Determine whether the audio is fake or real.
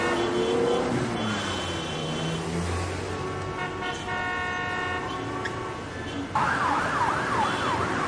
real